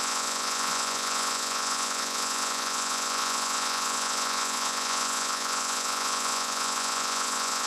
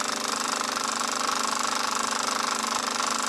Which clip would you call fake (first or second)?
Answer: first